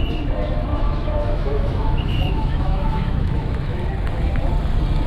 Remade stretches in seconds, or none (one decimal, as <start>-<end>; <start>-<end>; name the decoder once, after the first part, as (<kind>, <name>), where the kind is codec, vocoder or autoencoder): 0.7-3.8 (autoencoder, DAC-VAE)